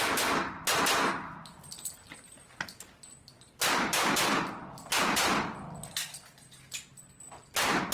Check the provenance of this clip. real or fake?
real